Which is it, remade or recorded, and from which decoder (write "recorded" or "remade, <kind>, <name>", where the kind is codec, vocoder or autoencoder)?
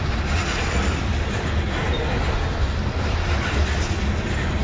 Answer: recorded